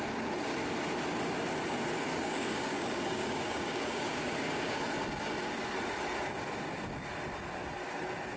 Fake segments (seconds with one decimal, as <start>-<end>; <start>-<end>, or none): 2.1-4.8